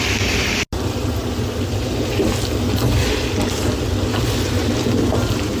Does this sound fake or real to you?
real